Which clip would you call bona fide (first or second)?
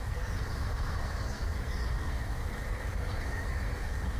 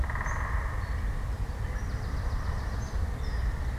second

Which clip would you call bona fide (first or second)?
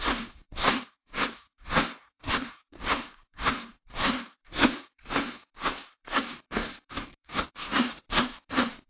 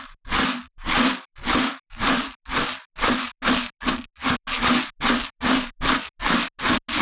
second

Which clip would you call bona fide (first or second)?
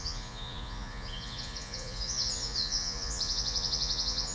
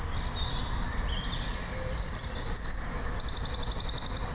second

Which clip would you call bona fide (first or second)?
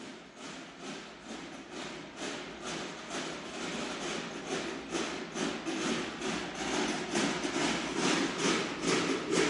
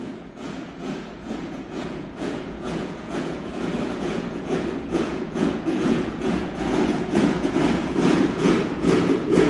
first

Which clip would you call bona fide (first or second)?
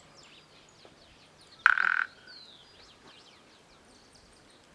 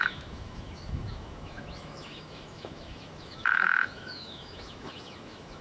first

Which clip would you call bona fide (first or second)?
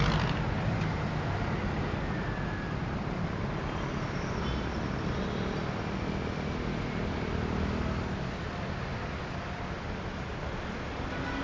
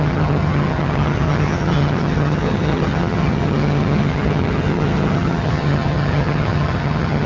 first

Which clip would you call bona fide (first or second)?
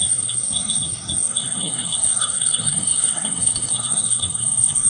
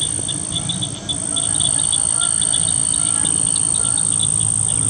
second